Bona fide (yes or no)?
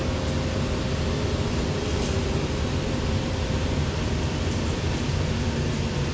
yes